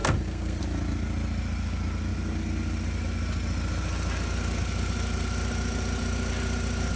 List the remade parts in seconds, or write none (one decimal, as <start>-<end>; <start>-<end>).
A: 0.0-0.6